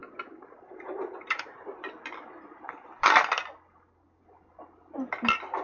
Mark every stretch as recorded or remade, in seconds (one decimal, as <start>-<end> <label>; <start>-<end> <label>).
0.0-3.4 remade; 3.4-5.6 recorded